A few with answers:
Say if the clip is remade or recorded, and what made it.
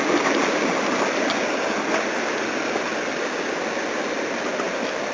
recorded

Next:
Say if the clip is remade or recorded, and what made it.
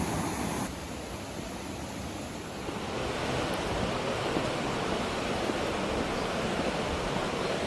recorded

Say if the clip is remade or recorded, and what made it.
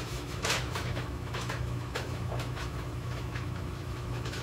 remade, autoencoder, DAC-VAE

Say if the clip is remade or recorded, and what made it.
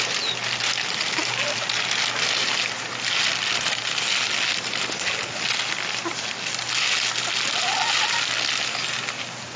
recorded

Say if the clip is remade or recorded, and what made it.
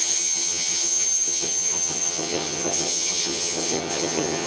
remade, vocoder, HiFi-GAN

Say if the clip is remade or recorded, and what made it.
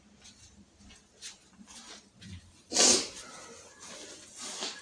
recorded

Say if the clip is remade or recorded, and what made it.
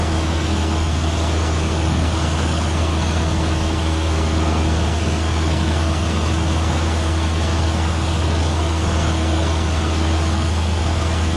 remade, codec, SNAC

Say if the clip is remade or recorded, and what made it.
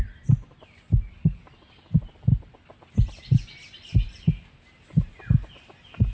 recorded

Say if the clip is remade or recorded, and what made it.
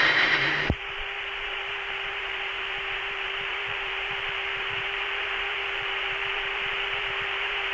remade, vocoder, BigVGAN v2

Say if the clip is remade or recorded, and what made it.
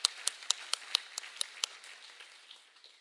recorded